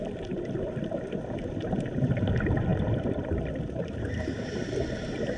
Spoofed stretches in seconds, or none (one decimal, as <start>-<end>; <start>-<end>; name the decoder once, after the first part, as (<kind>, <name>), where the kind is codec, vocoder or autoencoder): 0.0-5.4 (vocoder, BigVGAN v2)